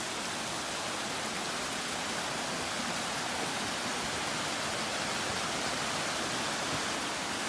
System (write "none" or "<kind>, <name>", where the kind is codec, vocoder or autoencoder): none